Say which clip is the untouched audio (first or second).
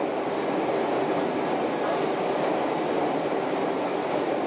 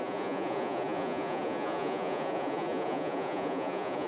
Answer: first